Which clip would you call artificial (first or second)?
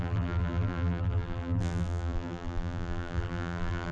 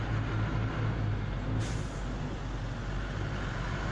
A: first